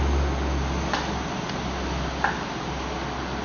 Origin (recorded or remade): recorded